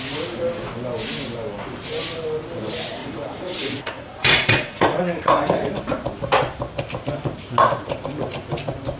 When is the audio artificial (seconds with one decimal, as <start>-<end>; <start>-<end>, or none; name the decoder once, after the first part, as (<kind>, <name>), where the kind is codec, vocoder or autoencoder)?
3.0-5.7 (vocoder, Vocos)